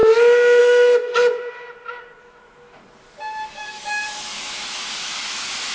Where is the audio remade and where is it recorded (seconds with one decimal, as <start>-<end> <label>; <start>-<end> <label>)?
0.0-0.6 recorded; 0.6-1.1 remade; 1.1-2.2 recorded; 2.2-2.8 remade; 2.8-3.5 recorded; 3.5-5.7 remade